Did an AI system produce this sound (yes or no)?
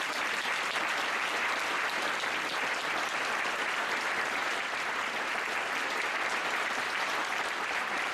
yes